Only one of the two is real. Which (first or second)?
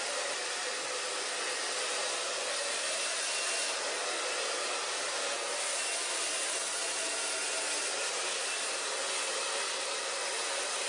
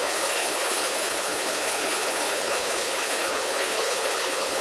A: first